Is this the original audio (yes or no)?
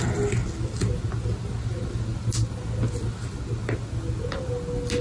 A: yes